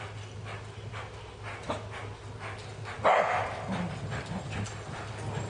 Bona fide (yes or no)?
yes